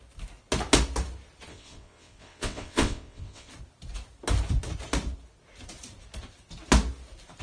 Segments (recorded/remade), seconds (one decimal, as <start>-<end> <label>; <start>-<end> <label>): 0.0-1.5 recorded; 1.5-3.5 remade; 3.5-7.4 recorded